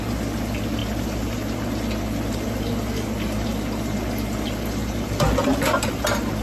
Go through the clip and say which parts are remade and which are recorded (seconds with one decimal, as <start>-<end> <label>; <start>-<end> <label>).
0.0-6.4 recorded